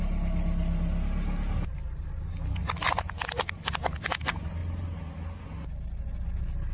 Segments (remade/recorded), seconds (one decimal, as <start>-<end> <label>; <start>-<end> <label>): 0.0-6.7 recorded